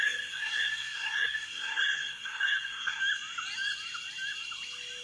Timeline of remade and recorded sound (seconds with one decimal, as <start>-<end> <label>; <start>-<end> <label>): 0.0-3.0 remade; 3.0-5.0 recorded